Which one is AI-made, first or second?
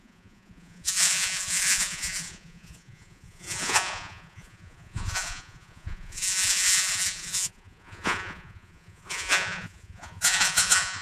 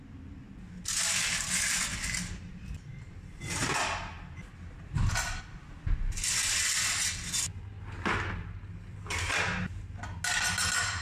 first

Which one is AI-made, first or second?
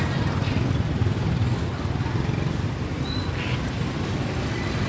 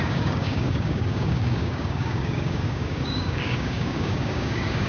second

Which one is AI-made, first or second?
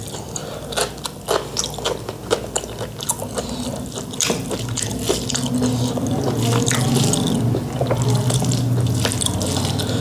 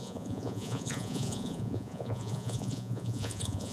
second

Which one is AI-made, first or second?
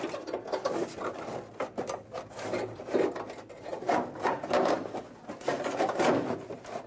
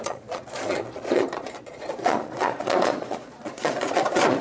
second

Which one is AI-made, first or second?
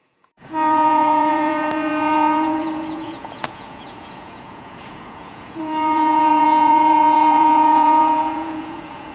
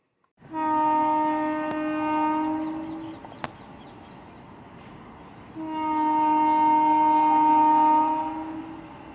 first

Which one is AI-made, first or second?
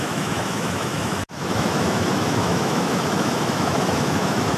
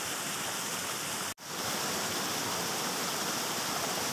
first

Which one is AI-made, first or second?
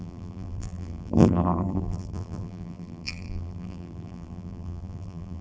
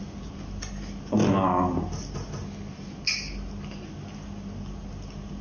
first